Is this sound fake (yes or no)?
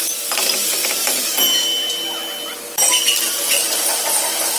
no